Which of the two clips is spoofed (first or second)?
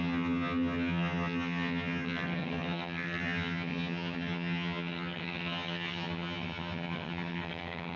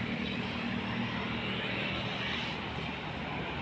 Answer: first